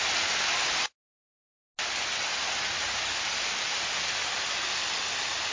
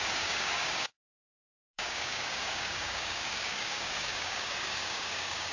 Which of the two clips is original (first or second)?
first